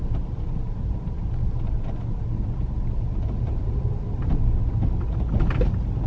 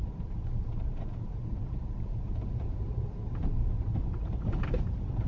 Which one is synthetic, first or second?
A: second